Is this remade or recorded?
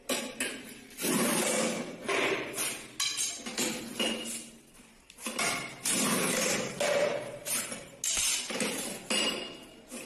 recorded